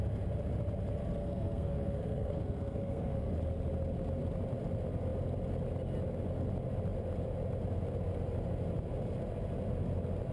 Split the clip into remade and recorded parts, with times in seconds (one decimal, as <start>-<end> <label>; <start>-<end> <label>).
0.0-1.2 recorded; 1.2-3.3 remade; 3.3-10.3 recorded